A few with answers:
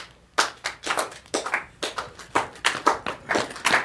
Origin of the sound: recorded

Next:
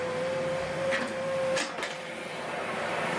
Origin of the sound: remade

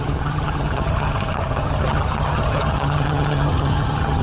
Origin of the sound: remade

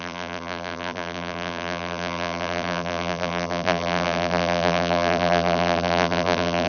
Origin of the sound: remade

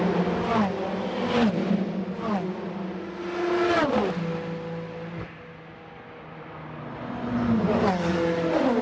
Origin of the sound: recorded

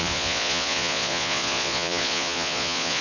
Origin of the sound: remade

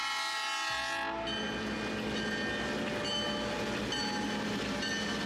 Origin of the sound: recorded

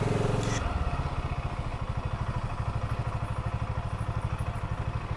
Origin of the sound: recorded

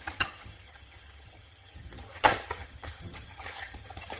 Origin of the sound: remade